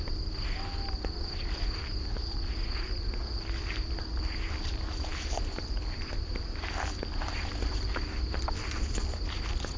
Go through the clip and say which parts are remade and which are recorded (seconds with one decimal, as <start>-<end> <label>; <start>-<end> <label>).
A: 0.0-9.8 recorded